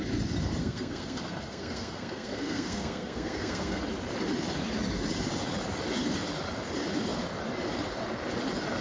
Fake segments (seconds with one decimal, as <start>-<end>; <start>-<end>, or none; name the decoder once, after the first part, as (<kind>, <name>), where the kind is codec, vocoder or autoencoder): 0.6-3.8 (codec, SNAC)